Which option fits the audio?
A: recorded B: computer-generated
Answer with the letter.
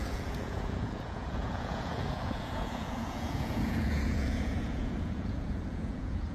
B